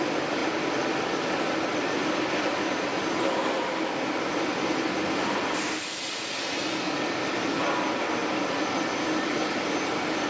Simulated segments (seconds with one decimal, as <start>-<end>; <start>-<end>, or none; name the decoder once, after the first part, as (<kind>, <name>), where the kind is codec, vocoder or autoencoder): none